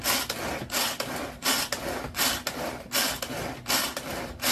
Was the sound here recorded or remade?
recorded